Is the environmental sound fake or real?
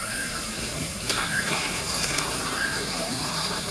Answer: fake